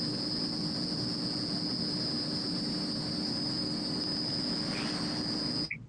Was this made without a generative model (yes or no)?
yes